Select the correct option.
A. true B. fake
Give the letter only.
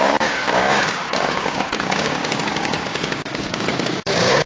B